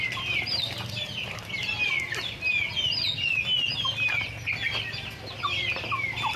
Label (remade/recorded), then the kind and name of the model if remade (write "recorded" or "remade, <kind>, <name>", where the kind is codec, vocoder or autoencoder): recorded